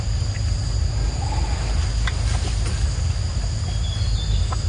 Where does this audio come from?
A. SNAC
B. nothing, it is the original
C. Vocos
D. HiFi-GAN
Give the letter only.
B